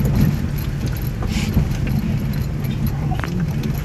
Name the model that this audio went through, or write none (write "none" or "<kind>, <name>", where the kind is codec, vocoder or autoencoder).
none